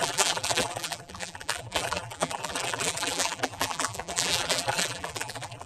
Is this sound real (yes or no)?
no